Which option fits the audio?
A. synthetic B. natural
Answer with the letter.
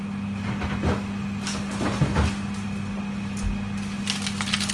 B